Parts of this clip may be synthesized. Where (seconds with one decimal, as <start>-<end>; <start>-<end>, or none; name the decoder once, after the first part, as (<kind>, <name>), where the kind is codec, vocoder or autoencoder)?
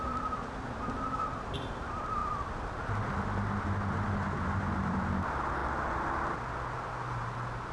0.0-2.2 (vocoder, BigVGAN v2); 4.0-5.6; 7.0-7.7